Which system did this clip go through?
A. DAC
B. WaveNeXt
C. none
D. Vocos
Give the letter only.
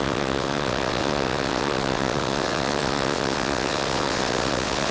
B